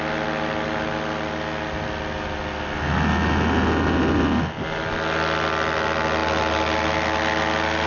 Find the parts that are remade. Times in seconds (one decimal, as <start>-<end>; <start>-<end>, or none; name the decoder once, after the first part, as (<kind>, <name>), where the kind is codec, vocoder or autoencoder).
none